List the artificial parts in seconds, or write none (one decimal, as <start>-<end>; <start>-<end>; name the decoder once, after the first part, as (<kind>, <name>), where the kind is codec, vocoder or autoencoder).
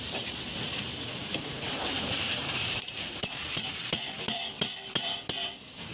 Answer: 1.2-3.7 (vocoder, BigVGAN v2)